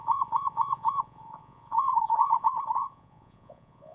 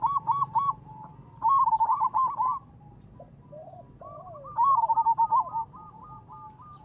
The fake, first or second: first